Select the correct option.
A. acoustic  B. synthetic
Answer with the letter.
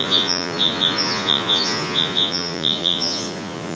B